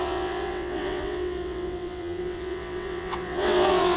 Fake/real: fake